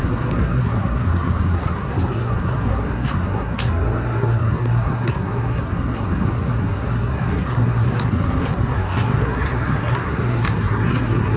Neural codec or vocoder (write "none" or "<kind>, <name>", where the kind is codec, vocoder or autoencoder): codec, SNAC